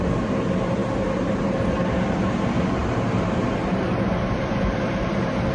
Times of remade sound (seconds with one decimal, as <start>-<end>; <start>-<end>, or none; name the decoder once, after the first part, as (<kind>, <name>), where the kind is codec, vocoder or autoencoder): 0.8-2.0 (vocoder, BigVGAN v2); 2.8-5.1